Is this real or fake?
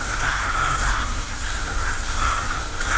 fake